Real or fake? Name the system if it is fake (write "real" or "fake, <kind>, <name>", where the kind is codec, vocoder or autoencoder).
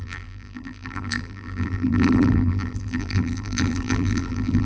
fake, vocoder, BigVGAN v2